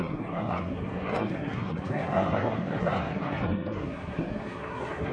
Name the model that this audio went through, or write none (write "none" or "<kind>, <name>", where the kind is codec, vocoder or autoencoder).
codec, SNAC